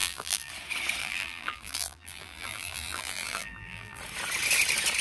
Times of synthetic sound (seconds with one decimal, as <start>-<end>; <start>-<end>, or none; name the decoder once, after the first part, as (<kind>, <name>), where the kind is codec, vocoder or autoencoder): 0.0-0.5 (vocoder, BigVGAN v2); 1.0-4.0